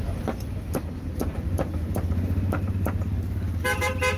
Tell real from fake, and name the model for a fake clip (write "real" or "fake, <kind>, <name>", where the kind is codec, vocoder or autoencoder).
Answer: real